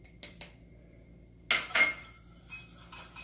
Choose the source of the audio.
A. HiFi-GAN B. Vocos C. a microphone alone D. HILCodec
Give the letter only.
C